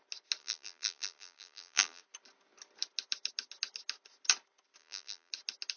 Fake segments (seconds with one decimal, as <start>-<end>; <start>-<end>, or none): 0.4-2.0; 4.8-5.3